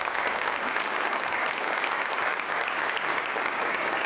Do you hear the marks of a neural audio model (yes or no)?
yes